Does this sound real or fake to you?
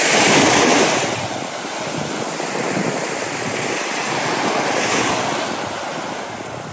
real